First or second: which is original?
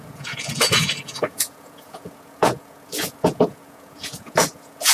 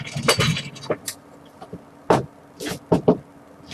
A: second